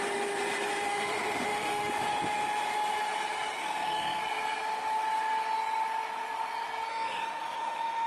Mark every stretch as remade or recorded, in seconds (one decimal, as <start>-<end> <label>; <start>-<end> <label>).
0.0-0.9 recorded; 0.9-1.9 remade; 1.9-3.6 recorded; 3.6-4.2 remade; 4.2-6.9 recorded; 6.9-8.1 remade